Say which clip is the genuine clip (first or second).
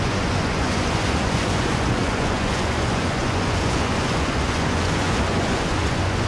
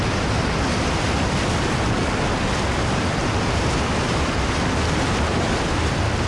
second